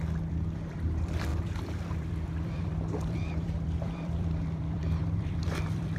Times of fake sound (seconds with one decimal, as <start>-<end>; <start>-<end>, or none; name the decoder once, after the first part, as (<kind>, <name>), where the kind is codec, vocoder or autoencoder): 0.0-6.0 (vocoder, BigVGAN v2)